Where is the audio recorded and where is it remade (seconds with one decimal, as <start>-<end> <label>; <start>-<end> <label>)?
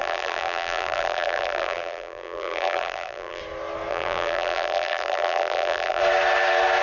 0.0-3.4 remade; 3.4-3.9 recorded; 3.9-6.0 remade; 6.0-6.8 recorded